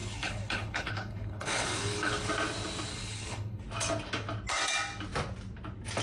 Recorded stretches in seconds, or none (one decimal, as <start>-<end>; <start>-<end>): 2.3-2.9; 3.6-6.0